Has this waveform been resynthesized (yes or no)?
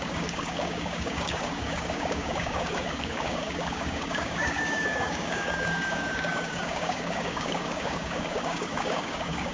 yes